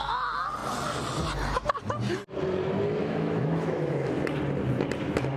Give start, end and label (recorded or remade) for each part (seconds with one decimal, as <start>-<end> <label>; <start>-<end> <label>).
0.0-3.0 recorded; 3.0-4.1 remade; 4.1-5.4 recorded